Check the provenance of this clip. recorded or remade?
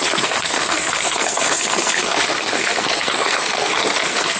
remade